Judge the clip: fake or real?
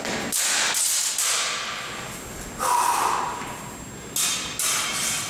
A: real